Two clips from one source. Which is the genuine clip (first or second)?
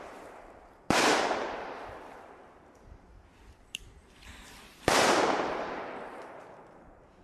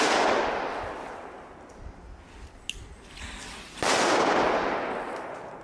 second